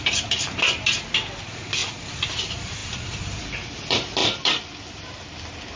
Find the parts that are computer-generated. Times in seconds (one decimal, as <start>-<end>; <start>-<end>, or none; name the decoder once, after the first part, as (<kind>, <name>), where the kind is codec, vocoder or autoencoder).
0.0-5.8 (vocoder, BigVGAN v2)